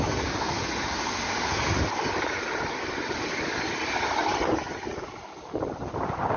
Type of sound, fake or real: real